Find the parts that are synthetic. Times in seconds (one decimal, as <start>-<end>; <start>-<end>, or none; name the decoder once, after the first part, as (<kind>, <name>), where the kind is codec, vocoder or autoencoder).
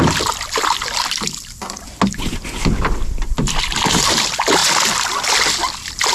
none